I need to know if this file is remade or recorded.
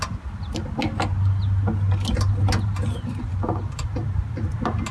recorded